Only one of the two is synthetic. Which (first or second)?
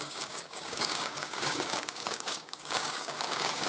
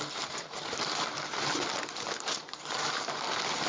first